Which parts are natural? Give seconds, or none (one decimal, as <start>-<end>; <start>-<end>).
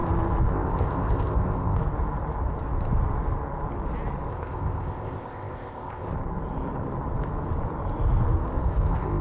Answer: 0.0-0.5; 1.8-4.3; 6.1-8.6